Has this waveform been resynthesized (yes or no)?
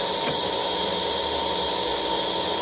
no